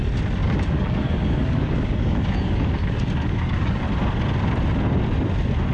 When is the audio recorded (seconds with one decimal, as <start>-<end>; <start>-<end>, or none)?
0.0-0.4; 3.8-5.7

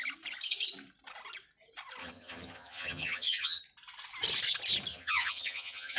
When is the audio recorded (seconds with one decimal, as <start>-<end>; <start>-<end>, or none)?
0.0-2.0; 3.6-4.9

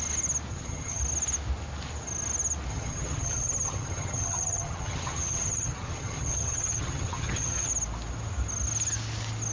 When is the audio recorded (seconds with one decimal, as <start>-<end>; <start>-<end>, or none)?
0.0-0.5; 1.0-2.7; 7.7-9.5

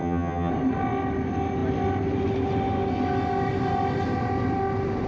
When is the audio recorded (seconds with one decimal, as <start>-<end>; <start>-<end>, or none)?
0.5-5.1

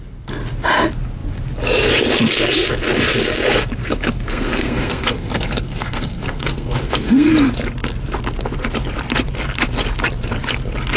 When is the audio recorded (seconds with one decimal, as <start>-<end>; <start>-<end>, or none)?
0.0-3.8; 7.3-11.0

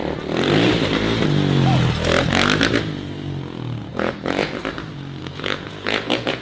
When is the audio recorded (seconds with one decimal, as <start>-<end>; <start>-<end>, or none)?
0.0-3.8; 4.6-5.2